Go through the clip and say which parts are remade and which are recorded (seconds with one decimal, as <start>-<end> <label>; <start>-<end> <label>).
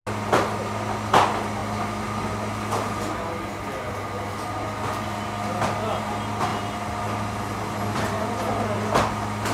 0.0-9.5 recorded